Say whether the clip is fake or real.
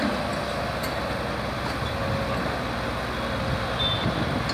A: real